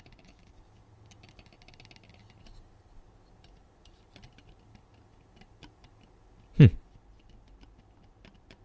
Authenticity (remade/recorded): recorded